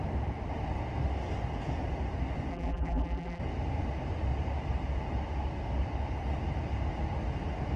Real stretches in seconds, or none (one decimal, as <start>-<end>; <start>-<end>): 0.0-2.5; 3.4-7.8